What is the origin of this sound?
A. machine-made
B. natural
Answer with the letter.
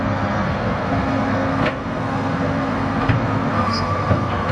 A